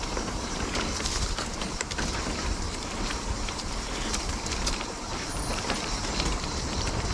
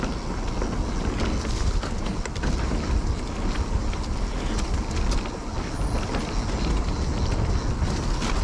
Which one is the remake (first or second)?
first